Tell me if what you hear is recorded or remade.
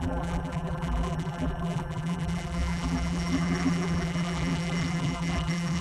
remade